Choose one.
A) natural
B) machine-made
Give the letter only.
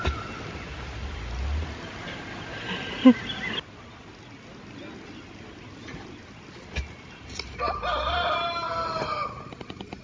A